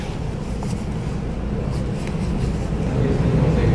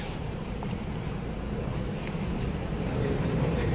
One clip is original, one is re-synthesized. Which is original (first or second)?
first